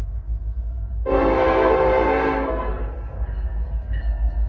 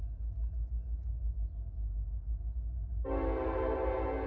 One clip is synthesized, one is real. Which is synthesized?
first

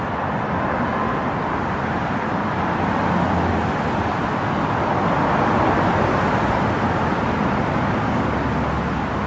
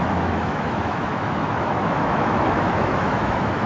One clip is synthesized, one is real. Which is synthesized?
second